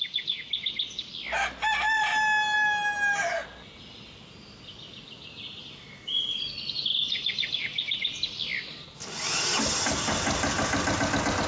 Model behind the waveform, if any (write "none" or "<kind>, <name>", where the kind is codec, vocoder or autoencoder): none